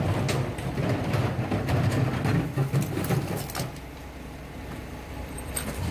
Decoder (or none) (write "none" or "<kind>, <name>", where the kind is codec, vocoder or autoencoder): vocoder, BigVGAN v2